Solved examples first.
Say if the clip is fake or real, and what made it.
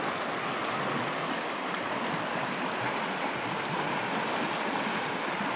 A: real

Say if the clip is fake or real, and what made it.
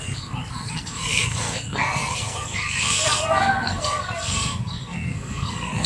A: fake, codec, SNAC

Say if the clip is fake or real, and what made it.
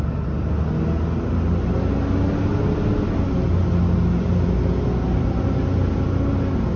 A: real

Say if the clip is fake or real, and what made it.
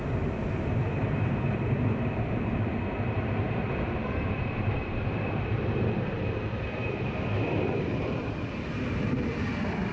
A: fake, vocoder, BigVGAN v2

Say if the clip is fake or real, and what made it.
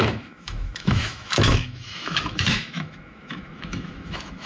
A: fake, autoencoder, DAC-VAE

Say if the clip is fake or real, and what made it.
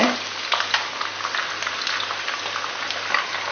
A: real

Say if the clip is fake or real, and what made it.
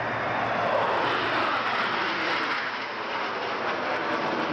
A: real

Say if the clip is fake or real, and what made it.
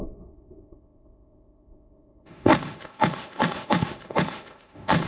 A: fake, autoencoder, DAC-VAE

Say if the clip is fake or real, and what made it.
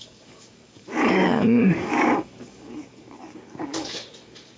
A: fake, codec, DAC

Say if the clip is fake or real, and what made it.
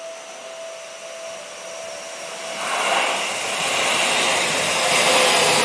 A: real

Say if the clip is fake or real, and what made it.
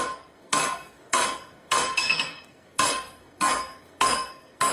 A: fake, codec, SNAC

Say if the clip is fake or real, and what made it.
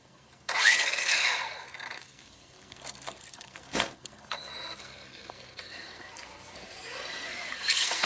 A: fake, codec, SNAC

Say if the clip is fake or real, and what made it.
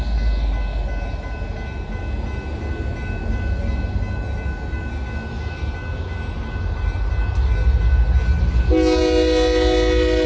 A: real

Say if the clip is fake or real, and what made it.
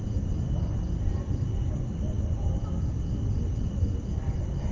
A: real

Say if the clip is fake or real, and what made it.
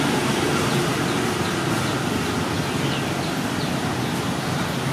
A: real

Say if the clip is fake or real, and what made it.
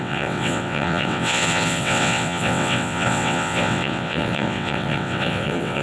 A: fake, vocoder, WaveNeXt